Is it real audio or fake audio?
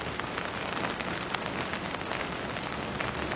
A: real